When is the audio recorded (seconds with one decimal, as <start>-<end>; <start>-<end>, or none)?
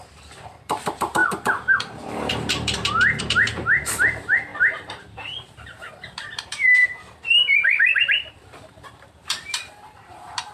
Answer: none